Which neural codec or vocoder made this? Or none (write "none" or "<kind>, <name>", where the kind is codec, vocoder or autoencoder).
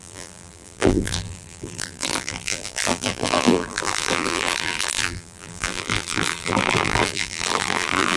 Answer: vocoder, BigVGAN v2